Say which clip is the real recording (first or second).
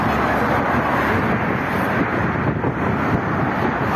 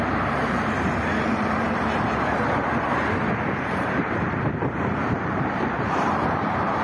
first